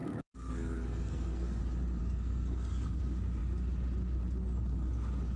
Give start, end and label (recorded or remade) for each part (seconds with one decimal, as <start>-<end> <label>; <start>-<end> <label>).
0.0-1.6 remade; 1.6-2.0 recorded; 2.0-3.0 remade; 3.0-5.4 recorded